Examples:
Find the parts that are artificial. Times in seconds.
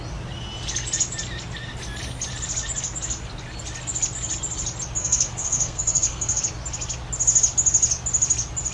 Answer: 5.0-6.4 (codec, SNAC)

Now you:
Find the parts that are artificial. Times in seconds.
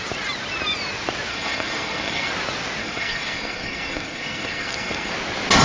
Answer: 1.3-2.3 (codec, SNAC); 2.8-5.1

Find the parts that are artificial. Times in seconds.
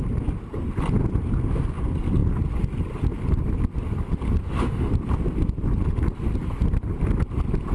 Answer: 4.4-4.9 (autoencoder, DAC-VAE)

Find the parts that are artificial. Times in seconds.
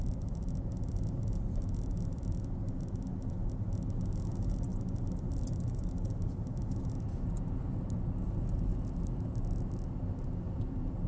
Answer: none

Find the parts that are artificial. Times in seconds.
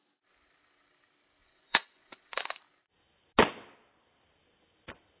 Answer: 1.4-2.6 (vocoder, Vocos)